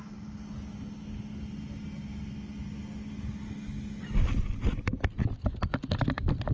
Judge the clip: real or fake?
real